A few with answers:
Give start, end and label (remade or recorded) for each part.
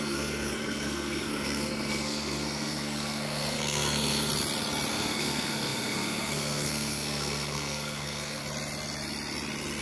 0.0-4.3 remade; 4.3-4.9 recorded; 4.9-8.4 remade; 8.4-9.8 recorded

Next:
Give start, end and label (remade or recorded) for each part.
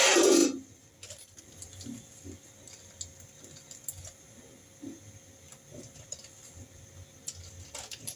0.0-8.2 recorded